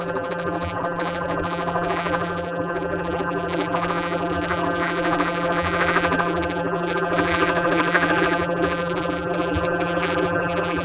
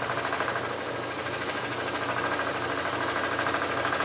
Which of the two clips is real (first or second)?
second